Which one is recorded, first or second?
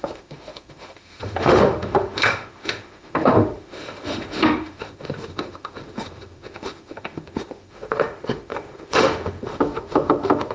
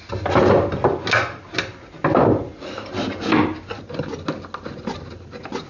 second